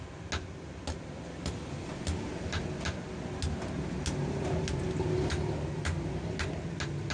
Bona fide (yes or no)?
yes